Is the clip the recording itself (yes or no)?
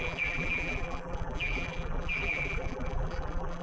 no